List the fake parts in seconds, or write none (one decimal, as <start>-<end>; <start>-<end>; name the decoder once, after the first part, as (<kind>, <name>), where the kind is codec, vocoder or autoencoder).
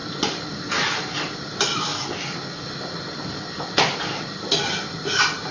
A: none